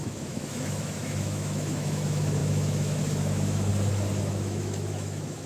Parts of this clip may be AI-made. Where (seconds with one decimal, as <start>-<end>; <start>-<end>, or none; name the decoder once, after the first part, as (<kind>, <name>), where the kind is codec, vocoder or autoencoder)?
0.0-3.7 (autoencoder, DAC-VAE); 4.2-5.5